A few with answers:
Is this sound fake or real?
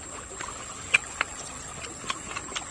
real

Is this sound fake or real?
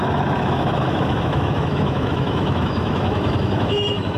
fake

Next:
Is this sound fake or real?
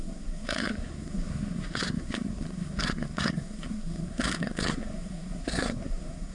fake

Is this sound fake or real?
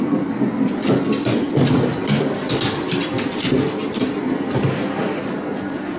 real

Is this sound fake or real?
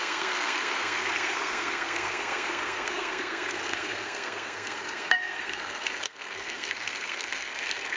fake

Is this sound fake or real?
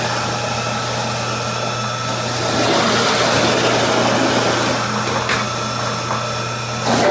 real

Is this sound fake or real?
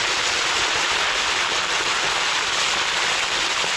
real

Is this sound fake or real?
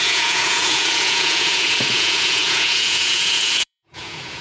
fake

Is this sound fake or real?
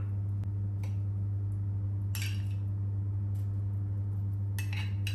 real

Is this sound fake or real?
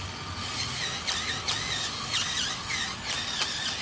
real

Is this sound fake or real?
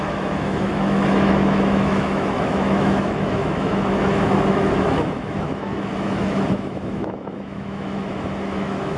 fake